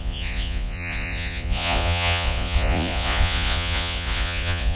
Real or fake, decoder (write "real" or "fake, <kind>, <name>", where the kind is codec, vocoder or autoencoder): fake, vocoder, Vocos